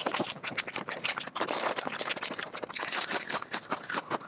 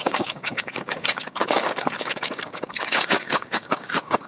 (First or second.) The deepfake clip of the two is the second